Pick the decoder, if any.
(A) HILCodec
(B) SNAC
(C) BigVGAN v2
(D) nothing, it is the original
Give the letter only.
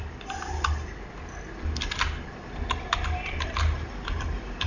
D